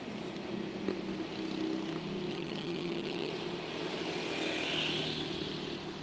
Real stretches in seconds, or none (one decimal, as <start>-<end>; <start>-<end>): 0.0-2.3; 3.3-6.0